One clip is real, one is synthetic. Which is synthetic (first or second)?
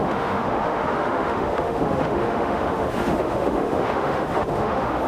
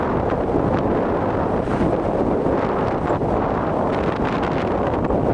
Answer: first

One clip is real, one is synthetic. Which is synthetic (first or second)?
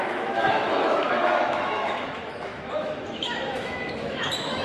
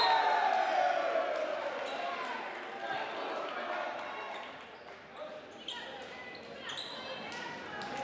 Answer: first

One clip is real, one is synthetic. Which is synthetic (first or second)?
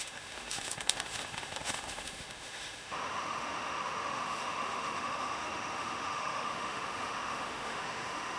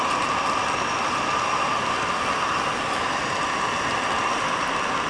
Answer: first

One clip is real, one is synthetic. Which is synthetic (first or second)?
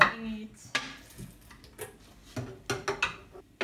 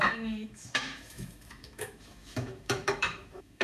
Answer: second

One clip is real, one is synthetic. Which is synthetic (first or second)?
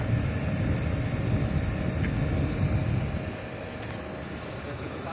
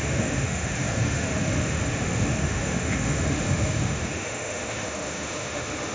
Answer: second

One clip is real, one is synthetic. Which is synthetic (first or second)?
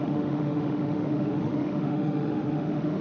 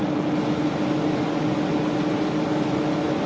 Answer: first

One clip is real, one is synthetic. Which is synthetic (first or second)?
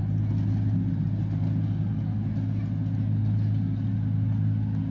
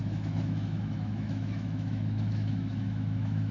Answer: second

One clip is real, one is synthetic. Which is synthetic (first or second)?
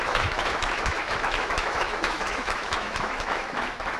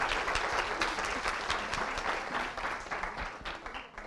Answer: first